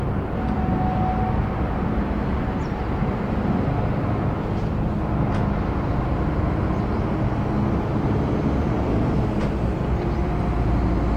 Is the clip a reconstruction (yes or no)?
no